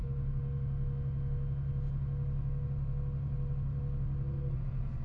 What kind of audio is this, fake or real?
real